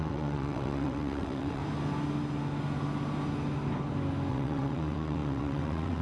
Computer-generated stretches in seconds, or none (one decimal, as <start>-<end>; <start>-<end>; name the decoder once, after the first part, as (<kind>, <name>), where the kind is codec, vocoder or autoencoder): 0.0-1.6 (vocoder, WaveNeXt); 4.3-6.0